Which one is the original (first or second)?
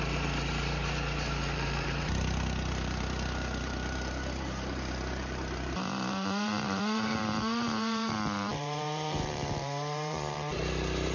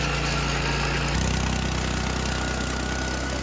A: second